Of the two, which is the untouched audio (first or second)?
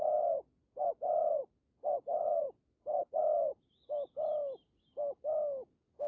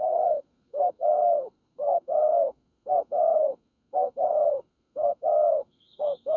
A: first